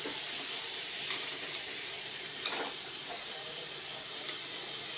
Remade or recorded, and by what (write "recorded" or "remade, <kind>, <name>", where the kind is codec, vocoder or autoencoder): remade, vocoder, BigVGAN v2